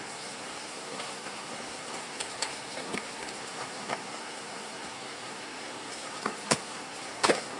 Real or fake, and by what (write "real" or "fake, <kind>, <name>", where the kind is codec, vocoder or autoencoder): fake, codec, SNAC